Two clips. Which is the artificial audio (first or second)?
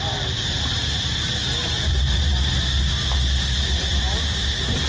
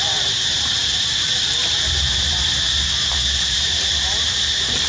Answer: second